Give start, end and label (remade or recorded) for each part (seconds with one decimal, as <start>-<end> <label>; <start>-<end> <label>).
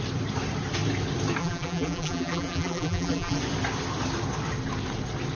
0.0-1.4 recorded; 1.4-3.4 remade; 3.4-5.3 recorded